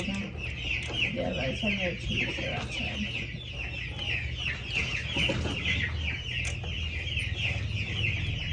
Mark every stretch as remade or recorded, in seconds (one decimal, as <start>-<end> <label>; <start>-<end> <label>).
0.0-8.5 recorded